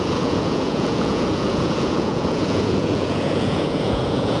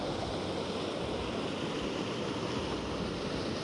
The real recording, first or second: second